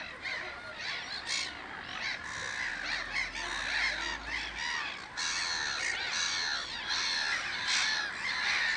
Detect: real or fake real